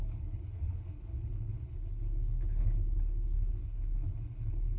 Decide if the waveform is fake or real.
fake